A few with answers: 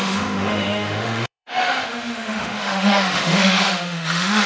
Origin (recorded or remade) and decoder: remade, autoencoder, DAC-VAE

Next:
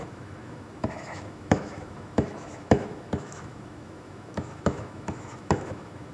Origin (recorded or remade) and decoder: remade, autoencoder, DAC-VAE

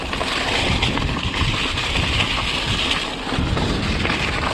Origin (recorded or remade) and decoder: recorded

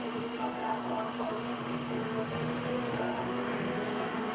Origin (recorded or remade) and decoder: remade, autoencoder, DAC-VAE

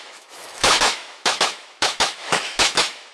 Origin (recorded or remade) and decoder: remade, autoencoder, DAC-VAE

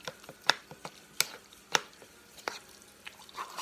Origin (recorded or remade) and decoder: recorded